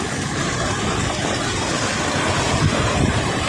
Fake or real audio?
real